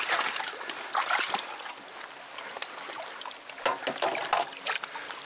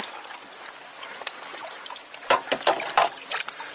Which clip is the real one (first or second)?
first